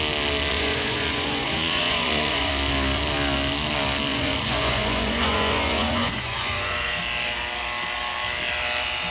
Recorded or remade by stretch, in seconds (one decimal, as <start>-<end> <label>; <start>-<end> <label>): 0.0-0.5 recorded; 0.5-2.5 remade; 2.5-4.1 recorded; 4.1-7.0 remade; 7.0-9.1 recorded